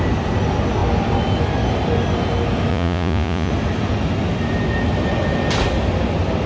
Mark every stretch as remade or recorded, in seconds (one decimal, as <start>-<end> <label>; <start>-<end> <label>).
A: 0.0-2.7 recorded; 2.7-3.5 remade; 3.5-6.5 recorded